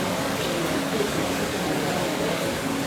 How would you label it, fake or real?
fake